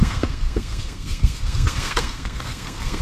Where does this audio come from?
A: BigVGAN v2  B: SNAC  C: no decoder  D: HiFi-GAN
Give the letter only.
B